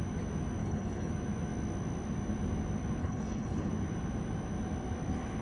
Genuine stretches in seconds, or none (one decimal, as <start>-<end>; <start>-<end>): 0.0-0.6; 1.1-3.0; 3.7-5.4